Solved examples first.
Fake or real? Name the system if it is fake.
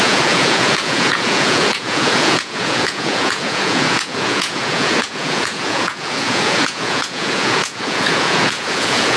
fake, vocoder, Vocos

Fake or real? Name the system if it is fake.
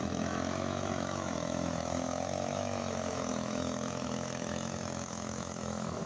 fake, autoencoder, DAC-VAE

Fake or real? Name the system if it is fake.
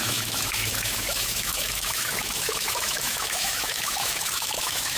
fake, autoencoder, DAC-VAE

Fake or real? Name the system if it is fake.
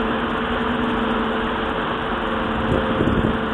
real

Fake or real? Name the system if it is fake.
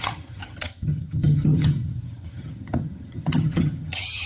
fake, vocoder, HiFi-GAN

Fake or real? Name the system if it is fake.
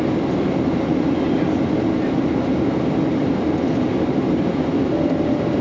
real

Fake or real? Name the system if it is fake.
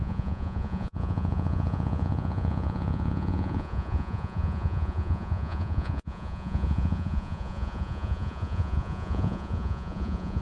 fake, vocoder, Vocos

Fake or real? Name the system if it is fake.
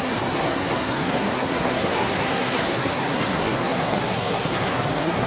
fake, codec, SNAC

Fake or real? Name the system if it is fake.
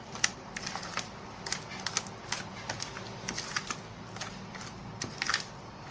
real